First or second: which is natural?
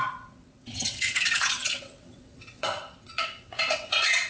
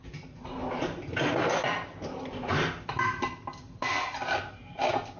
second